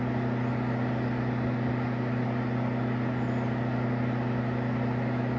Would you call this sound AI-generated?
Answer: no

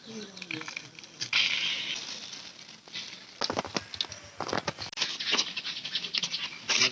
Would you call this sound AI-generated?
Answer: no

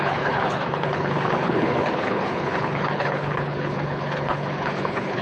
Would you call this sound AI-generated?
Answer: yes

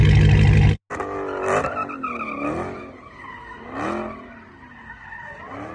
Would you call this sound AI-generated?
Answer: no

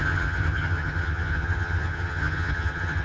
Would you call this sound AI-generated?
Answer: yes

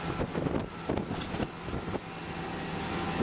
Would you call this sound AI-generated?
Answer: no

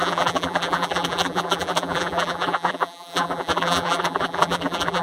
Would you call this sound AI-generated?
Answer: yes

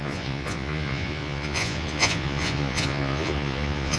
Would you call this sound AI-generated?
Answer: yes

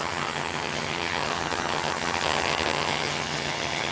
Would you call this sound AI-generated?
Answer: yes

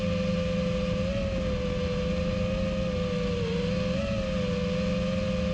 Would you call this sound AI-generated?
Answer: no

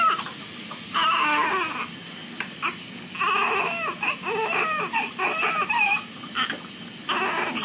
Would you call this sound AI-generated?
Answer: no